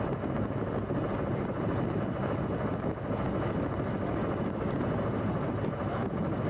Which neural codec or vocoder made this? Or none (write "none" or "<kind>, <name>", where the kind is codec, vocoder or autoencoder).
none